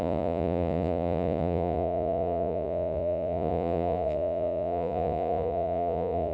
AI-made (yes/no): yes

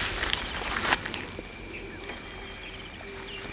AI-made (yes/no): no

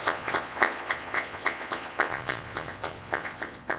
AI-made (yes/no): yes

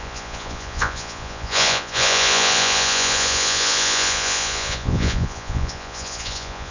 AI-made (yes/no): yes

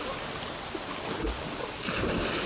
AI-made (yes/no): no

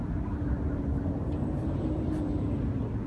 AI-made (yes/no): no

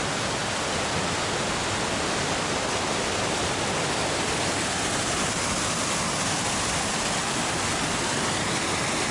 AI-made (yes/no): no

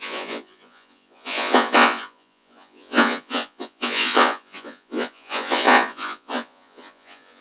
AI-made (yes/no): yes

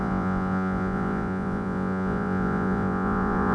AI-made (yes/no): yes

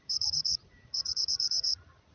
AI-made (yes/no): yes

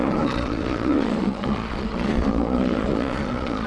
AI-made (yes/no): yes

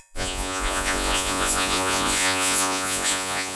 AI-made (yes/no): yes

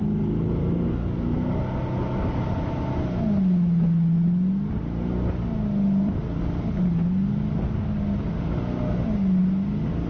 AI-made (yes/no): no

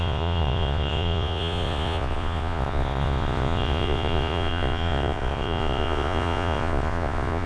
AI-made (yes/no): yes